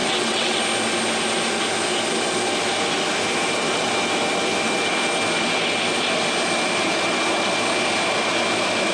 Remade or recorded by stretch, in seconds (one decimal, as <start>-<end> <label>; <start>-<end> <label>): 0.0-0.6 remade; 0.6-8.9 recorded